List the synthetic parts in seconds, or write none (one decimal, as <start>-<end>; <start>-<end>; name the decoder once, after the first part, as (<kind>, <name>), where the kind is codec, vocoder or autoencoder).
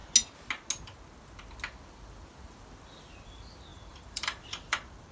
3.7-5.1 (vocoder, BigVGAN v2)